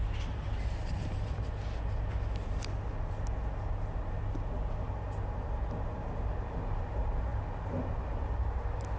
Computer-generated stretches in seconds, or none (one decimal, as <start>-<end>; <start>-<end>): none